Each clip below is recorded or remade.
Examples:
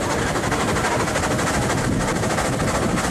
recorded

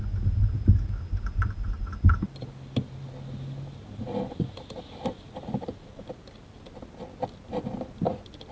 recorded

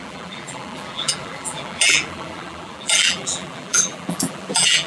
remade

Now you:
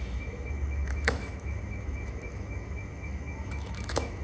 remade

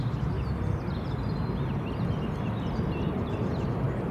recorded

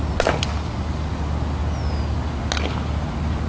recorded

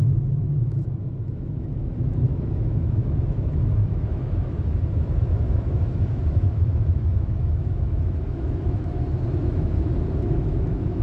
remade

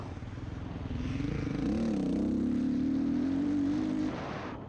recorded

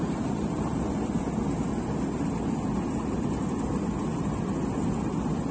recorded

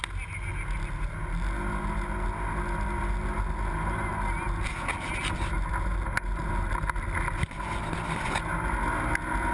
recorded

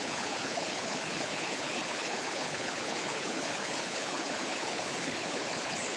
remade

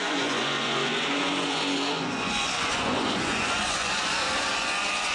remade